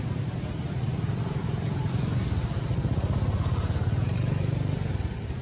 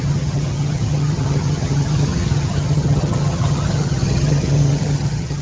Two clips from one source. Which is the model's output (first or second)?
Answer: second